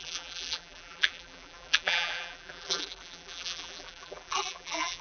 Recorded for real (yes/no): no